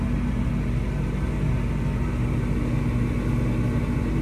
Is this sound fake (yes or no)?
no